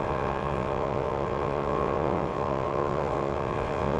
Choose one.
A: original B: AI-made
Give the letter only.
B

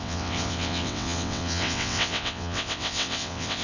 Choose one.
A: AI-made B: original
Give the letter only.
A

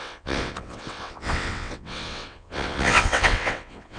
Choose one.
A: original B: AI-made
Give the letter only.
B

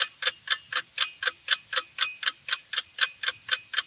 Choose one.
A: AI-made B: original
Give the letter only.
B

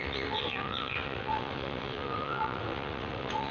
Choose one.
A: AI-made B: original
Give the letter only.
A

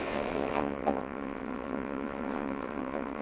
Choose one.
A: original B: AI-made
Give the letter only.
B